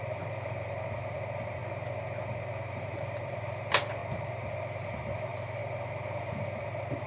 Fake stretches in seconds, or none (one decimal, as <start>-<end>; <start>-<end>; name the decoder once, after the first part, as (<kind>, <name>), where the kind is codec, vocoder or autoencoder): 0.0-1.6 (vocoder, BigVGAN v2); 2.7-4.0; 4.6-5.6; 6.2-7.1